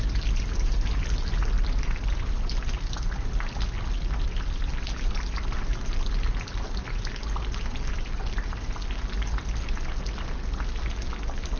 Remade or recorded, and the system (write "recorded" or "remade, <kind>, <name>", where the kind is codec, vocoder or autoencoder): recorded